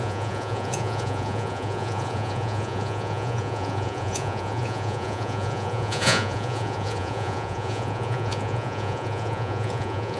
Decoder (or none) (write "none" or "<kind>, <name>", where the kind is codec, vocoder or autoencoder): vocoder, Vocos